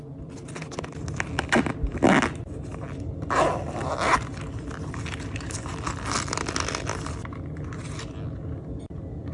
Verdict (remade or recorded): recorded